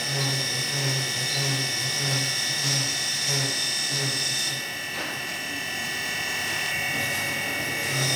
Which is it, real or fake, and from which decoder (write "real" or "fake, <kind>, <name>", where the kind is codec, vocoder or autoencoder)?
real